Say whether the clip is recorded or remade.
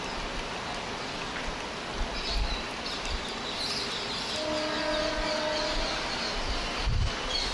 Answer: recorded